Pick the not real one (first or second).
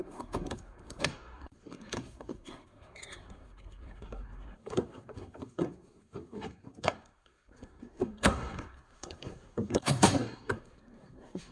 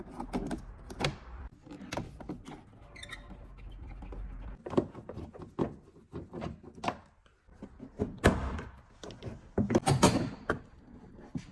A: first